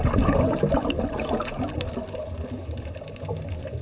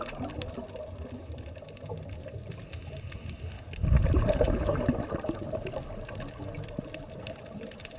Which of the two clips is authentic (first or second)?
first